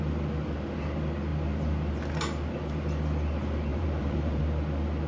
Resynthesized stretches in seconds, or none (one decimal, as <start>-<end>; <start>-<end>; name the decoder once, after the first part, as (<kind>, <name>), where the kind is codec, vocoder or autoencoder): 3.7-4.4 (vocoder, BigVGAN v2)